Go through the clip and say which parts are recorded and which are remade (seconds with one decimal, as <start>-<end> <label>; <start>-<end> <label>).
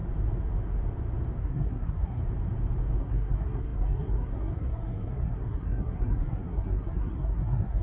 0.0-1.4 recorded; 1.4-2.2 remade; 2.2-3.0 recorded; 3.0-7.8 remade